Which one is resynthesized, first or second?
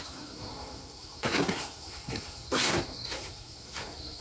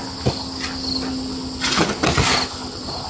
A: first